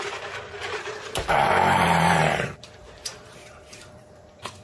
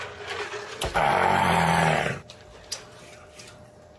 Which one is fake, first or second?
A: first